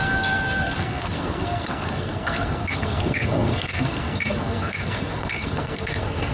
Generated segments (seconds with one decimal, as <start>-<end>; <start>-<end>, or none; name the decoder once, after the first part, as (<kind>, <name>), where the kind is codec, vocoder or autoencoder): 0.0-6.3 (codec, SNAC)